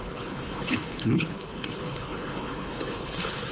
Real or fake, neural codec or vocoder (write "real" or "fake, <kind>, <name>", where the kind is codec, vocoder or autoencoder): fake, codec, HILCodec